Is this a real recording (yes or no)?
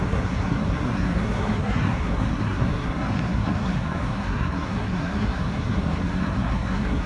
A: no